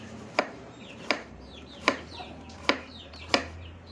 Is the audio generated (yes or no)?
yes